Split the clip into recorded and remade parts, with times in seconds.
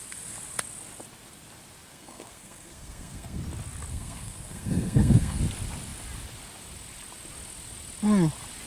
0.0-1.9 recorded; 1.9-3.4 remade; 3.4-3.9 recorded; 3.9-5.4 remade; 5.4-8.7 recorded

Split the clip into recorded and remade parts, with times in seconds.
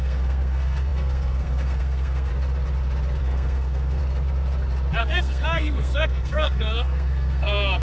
0.0-2.3 remade; 2.3-3.2 recorded; 3.2-4.0 remade; 4.0-5.0 recorded; 5.0-7.8 remade